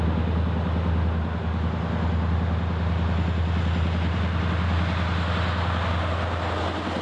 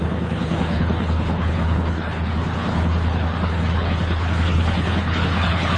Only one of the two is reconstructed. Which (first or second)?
second